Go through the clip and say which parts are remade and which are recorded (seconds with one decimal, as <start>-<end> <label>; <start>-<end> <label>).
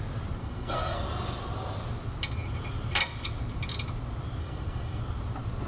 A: 0.0-0.4 recorded; 0.4-1.0 remade; 1.0-4.4 recorded; 4.4-5.0 remade; 5.0-5.7 recorded